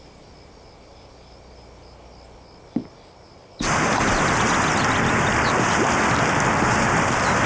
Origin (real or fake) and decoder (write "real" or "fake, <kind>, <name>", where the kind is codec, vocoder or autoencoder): real